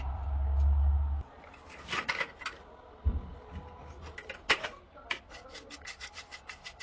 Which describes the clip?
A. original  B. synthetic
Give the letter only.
A